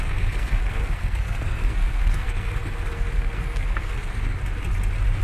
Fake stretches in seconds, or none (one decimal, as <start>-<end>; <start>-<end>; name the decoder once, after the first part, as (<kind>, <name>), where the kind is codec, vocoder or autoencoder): 0.0-4.4 (codec, SNAC)